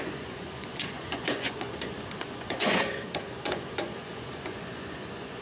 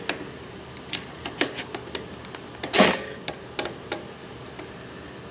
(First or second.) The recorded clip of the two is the second